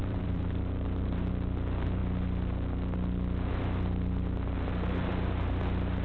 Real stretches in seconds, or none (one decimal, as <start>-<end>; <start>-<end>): 1.3-6.0